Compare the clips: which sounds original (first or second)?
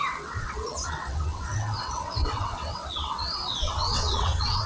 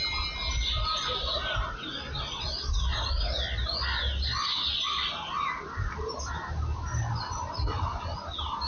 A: second